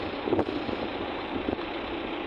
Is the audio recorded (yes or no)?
yes